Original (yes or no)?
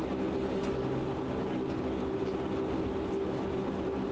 yes